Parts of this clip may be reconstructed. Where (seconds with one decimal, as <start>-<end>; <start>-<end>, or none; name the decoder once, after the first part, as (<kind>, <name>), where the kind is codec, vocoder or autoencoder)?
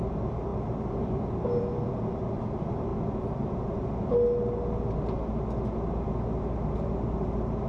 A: none